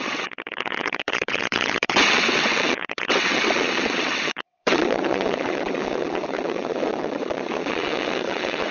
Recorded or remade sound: remade